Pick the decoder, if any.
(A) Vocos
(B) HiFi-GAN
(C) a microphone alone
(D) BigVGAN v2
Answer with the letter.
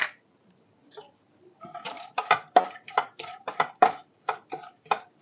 D